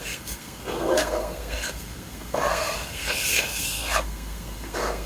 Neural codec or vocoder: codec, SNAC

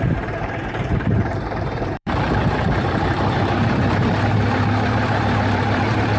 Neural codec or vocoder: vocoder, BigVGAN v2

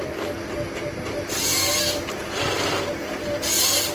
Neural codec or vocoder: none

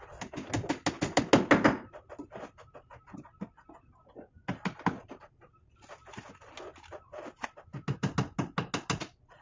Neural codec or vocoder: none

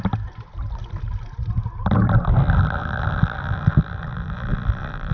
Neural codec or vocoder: none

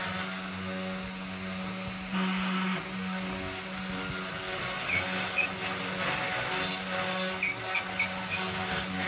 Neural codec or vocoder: none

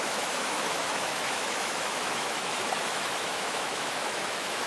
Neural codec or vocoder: autoencoder, DAC-VAE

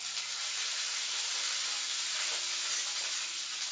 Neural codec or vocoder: none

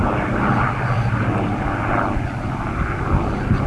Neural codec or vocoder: none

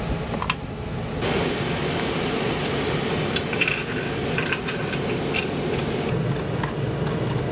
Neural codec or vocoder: none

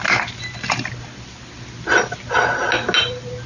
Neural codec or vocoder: none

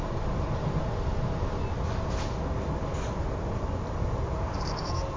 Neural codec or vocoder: none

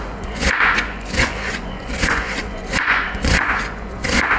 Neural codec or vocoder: vocoder, Vocos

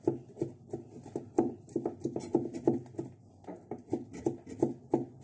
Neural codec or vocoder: none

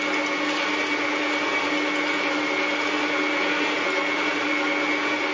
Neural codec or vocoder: none